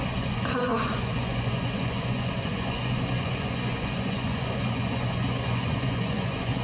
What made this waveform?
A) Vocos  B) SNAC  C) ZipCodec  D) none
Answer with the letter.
A